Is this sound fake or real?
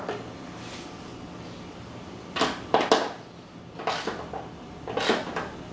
real